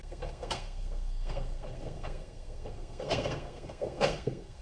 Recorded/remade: remade